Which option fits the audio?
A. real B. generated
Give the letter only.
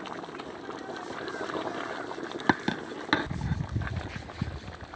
A